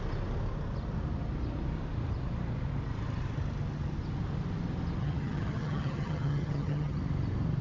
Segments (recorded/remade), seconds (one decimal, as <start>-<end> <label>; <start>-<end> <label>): 0.0-5.0 recorded; 5.0-7.0 remade; 7.0-7.6 recorded